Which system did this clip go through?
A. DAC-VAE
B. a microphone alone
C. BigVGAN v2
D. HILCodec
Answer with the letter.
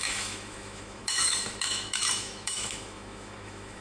A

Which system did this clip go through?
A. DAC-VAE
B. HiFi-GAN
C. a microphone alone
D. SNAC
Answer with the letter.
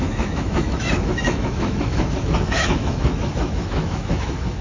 A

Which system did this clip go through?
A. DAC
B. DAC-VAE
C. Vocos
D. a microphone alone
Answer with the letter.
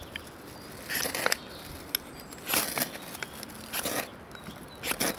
D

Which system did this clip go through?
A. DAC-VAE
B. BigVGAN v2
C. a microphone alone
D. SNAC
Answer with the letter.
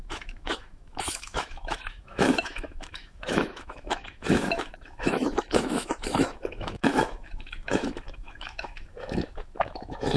A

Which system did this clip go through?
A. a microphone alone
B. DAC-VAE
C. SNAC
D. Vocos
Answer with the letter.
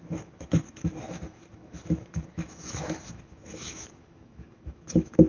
B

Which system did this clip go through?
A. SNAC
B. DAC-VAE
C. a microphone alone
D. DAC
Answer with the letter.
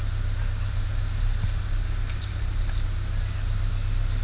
C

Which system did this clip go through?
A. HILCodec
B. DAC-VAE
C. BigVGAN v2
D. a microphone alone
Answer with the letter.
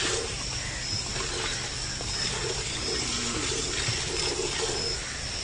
D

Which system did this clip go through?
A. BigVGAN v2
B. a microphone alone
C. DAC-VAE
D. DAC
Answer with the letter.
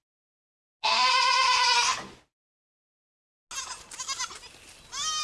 B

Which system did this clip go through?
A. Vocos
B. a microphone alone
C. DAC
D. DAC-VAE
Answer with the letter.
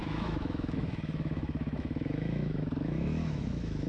D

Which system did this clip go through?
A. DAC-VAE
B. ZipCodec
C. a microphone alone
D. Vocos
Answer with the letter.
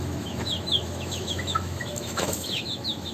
A